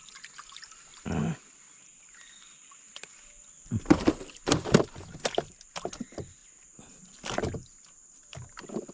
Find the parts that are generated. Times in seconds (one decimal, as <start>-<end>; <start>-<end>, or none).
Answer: none